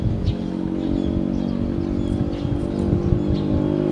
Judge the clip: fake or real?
real